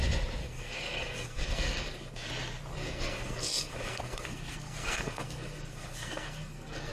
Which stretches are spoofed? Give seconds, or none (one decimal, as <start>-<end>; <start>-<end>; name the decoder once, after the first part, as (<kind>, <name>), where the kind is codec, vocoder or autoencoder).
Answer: 0.4-2.3 (codec, SNAC); 2.7-6.9